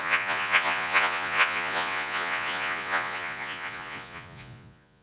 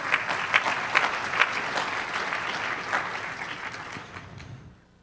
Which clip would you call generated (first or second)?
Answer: first